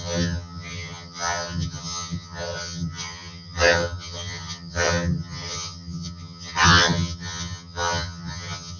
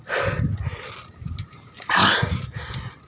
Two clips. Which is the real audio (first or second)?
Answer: second